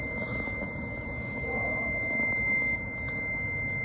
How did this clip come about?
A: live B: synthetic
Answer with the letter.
A